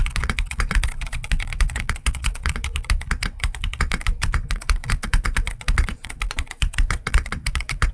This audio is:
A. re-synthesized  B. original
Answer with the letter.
A